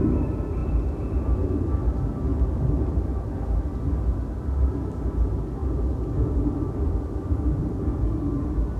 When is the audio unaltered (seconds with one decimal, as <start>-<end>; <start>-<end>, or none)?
0.0-0.6; 1.9-2.3; 3.4-5.6; 7.6-8.8